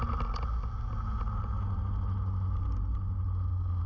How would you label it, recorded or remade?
recorded